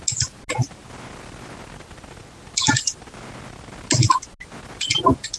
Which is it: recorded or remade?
recorded